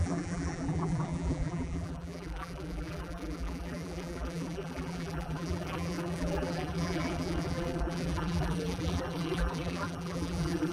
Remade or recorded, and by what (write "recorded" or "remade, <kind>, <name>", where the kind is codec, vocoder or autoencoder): remade, vocoder, BigVGAN v2